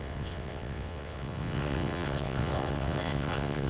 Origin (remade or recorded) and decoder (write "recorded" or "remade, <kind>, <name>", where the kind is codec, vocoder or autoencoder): remade, vocoder, WaveNeXt